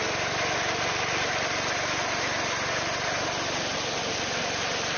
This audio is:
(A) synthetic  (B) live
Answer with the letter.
B